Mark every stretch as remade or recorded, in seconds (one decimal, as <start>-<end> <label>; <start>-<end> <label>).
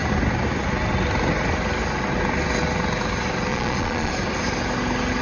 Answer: 0.0-3.5 recorded; 3.5-4.1 remade; 4.1-5.2 recorded